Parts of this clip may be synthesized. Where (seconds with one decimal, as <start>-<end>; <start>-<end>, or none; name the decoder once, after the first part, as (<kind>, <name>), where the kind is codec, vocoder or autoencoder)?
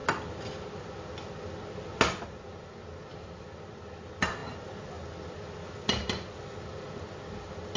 none